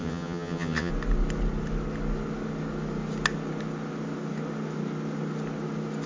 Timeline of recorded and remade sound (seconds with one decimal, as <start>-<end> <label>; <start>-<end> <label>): 0.0-0.9 remade; 0.9-6.1 recorded